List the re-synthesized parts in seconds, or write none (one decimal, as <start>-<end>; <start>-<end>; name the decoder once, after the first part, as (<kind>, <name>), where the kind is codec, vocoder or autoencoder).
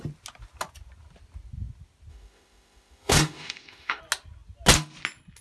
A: 2.1-4.0 (autoencoder, DAC-VAE)